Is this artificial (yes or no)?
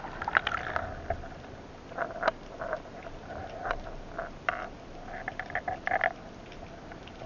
no